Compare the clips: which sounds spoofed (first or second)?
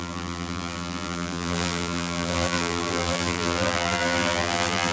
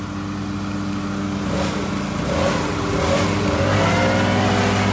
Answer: first